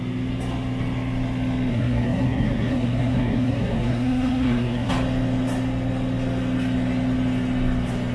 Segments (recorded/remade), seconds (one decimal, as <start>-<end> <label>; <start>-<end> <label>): 0.0-1.7 recorded; 1.7-4.9 remade; 4.9-8.1 recorded